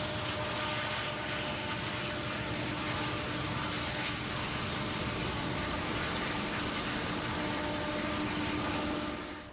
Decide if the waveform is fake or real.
real